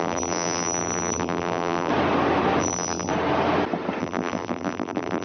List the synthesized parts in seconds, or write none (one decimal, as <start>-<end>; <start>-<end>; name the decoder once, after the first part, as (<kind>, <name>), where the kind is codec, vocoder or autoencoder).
0.0-1.9 (vocoder, BigVGAN v2); 2.6-3.1; 4.0-5.2